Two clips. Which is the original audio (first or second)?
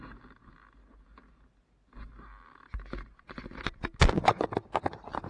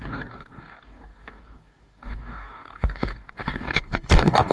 first